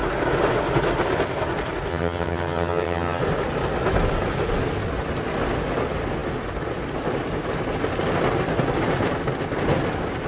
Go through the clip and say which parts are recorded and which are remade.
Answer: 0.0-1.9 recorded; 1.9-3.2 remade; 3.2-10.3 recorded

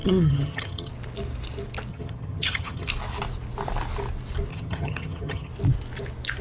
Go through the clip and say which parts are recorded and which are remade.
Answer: 0.0-0.9 remade; 0.9-1.9 recorded; 1.9-2.9 remade; 2.9-4.5 recorded; 4.5-5.5 remade; 5.5-6.4 recorded

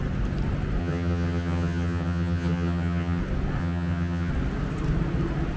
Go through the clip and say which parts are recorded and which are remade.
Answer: 0.0-0.8 recorded; 0.8-3.2 remade; 3.2-3.6 recorded; 3.6-4.3 remade; 4.3-5.6 recorded

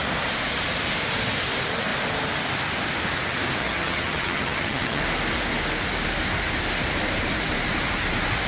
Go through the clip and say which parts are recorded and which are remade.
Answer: 0.0-3.6 recorded; 3.6-5.0 remade; 5.0-8.5 recorded

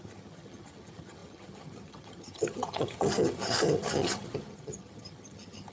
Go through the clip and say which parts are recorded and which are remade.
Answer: 0.0-5.7 remade

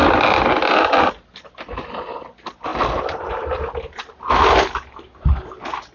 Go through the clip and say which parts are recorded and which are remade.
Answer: 0.0-5.9 recorded

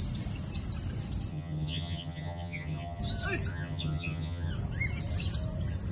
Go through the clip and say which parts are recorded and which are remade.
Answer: 0.0-1.3 recorded; 1.3-3.0 remade; 3.0-3.5 recorded; 3.5-4.5 remade; 4.5-5.9 recorded

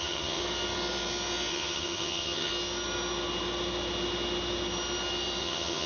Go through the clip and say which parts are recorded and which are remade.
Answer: 0.0-0.4 remade; 0.4-1.5 recorded; 1.5-2.5 remade; 2.5-5.4 recorded; 5.4-5.9 remade